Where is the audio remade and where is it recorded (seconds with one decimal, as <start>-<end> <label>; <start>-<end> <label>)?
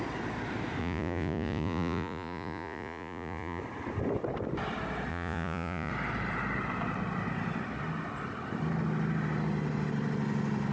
0.0-0.8 recorded; 0.8-3.6 remade; 3.6-5.1 recorded; 5.1-5.9 remade; 5.9-10.7 recorded